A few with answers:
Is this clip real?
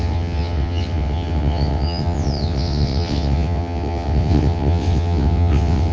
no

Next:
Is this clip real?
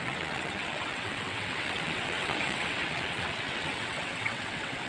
no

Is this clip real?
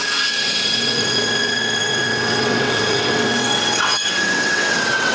no